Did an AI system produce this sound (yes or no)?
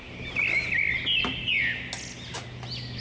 no